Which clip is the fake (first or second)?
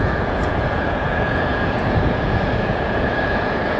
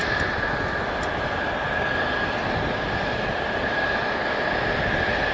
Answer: first